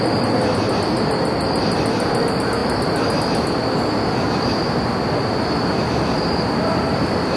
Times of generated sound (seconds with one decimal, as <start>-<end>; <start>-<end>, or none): none